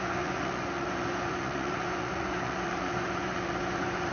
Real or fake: fake